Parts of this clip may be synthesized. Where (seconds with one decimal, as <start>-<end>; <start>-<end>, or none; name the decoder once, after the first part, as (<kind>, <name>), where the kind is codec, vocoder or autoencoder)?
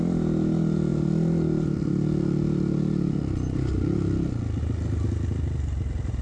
none